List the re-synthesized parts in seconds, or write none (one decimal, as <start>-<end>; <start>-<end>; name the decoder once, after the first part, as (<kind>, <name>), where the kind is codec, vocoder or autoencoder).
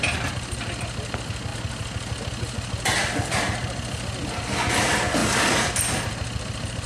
none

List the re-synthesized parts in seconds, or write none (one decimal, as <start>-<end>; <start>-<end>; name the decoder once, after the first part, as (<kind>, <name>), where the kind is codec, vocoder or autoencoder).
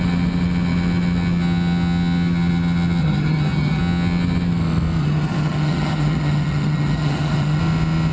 3.0-3.8 (vocoder, HiFi-GAN); 5.0-7.6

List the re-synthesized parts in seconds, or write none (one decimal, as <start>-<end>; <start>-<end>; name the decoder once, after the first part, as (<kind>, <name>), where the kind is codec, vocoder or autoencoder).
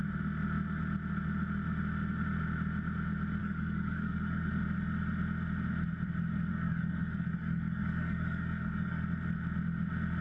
3.4-4.5 (codec, DAC); 6.5-9.0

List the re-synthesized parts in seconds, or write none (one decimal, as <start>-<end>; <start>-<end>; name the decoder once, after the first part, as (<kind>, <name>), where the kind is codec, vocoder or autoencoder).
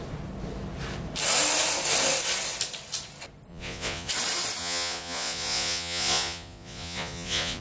3.5-4.1 (vocoder, Vocos); 4.6-7.6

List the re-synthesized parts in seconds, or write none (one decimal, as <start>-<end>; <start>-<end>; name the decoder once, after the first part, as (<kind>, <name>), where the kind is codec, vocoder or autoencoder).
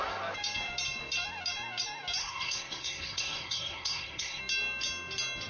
2.2-4.4 (codec, SNAC)